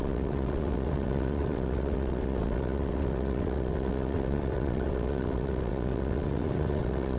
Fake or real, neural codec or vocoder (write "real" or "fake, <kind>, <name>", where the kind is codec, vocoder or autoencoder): fake, vocoder, WaveNeXt